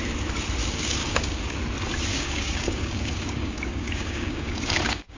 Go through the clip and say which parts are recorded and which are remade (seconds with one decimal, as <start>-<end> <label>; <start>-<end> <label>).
0.0-0.6 recorded; 0.6-1.6 remade; 1.6-2.1 recorded; 2.1-5.2 remade